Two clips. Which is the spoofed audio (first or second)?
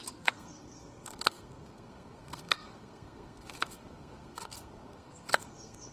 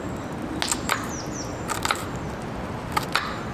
first